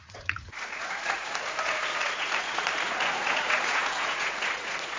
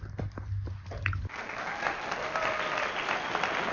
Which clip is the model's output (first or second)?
first